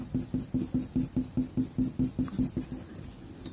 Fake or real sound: fake